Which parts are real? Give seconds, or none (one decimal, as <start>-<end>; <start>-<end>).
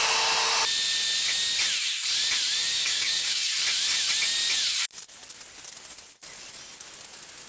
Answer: 0.0-2.8; 3.5-7.5